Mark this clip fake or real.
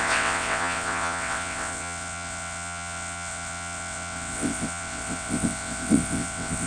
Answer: fake